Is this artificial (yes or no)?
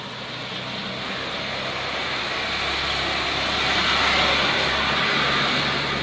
no